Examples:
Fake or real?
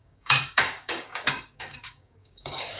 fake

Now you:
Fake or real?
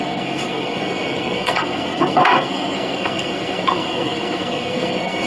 fake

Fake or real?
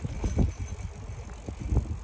real